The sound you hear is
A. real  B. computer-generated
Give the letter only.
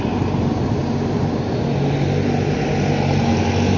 A